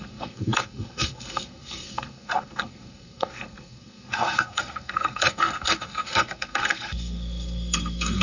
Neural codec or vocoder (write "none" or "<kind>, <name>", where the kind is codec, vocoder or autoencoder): codec, SNAC